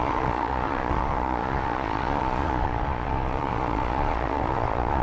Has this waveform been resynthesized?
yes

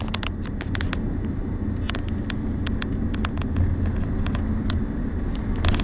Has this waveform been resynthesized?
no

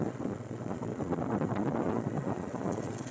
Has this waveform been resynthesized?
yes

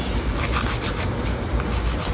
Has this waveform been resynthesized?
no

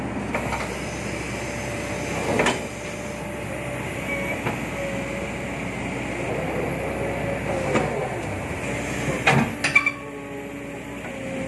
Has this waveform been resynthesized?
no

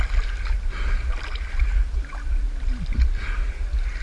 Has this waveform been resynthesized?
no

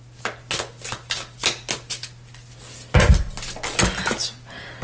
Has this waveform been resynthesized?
no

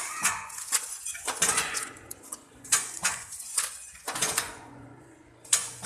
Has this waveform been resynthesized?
yes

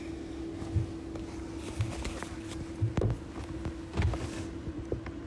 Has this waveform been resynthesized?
no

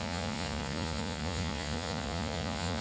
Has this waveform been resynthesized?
yes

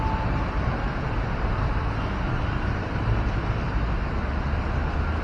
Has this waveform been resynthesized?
no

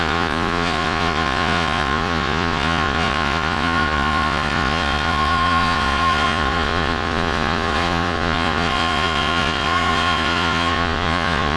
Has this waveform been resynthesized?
yes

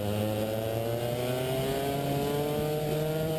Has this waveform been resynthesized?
no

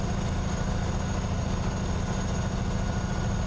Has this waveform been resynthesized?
no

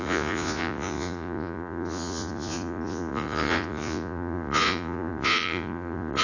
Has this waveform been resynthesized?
yes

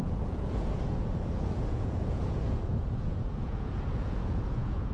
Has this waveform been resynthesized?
yes